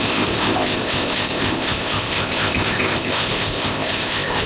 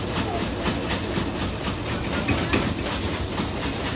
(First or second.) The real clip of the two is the second